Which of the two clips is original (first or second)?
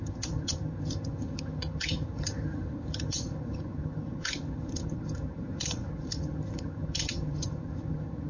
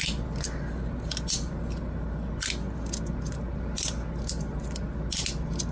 second